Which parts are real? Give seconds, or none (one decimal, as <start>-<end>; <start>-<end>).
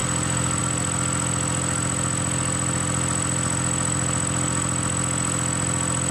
0.6-6.1